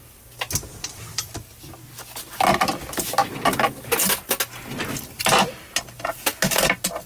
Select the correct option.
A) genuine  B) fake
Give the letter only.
A